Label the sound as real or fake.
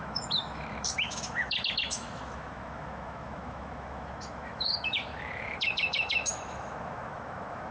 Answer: fake